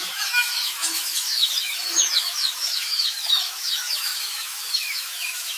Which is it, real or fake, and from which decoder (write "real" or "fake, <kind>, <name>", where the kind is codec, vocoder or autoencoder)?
fake, autoencoder, DAC-VAE